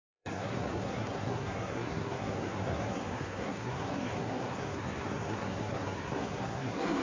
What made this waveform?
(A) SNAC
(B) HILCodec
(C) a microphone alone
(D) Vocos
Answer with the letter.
A